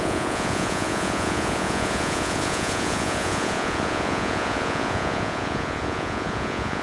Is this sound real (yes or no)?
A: no